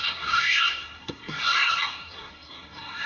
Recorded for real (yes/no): no